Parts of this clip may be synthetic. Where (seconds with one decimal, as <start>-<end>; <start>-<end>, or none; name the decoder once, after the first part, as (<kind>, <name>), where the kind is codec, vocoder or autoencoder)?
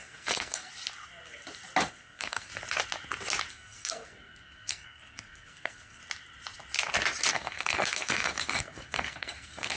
0.0-0.7 (codec, SNAC); 1.9-2.5; 3.5-6.0; 7.3-9.8